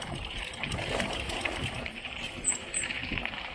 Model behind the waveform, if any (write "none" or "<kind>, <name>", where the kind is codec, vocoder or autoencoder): vocoder, BigVGAN v2